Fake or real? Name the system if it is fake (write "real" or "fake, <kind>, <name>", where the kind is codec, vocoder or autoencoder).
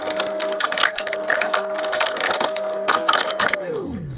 fake, codec, SNAC